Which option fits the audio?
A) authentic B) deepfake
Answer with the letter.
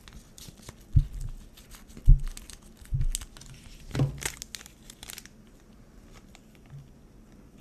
A